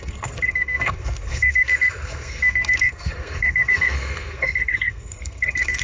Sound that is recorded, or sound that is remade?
remade